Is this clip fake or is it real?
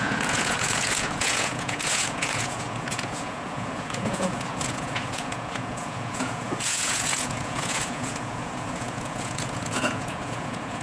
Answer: fake